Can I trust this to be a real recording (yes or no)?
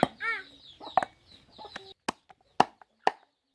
yes